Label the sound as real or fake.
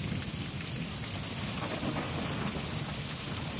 real